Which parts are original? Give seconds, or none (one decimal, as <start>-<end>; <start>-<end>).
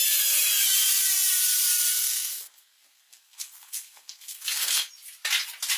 0.0-1.9; 4.9-5.8